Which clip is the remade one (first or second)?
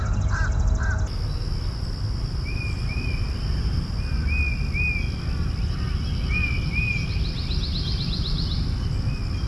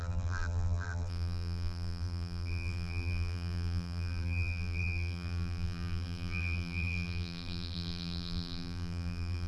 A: second